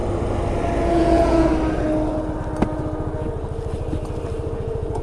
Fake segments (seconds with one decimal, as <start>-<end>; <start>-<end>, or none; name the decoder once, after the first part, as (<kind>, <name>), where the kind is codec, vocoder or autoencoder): 0.9-1.5 (vocoder, Vocos); 4.5-5.0